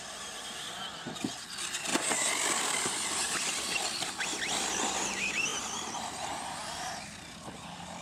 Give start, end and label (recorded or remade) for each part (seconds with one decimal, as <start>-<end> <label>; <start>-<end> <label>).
0.0-1.9 recorded; 1.9-2.8 remade; 2.8-8.0 recorded